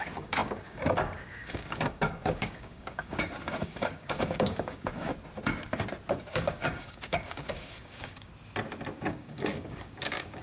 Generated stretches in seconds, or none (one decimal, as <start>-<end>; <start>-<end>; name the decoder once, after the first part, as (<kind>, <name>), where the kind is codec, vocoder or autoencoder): 0.0-5.1 (codec, DAC); 6.3-8.3; 9.0-10.4